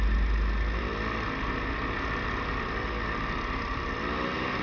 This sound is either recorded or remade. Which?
recorded